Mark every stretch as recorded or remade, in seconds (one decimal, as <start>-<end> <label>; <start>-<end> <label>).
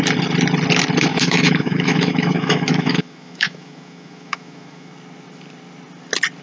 0.0-1.1 recorded; 1.1-4.9 remade; 4.9-6.4 recorded